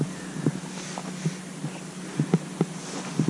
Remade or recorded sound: recorded